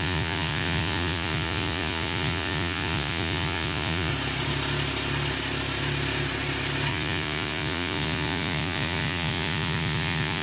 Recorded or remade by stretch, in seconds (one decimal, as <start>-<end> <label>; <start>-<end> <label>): 0.0-4.1 remade; 4.1-6.9 recorded; 6.9-10.4 remade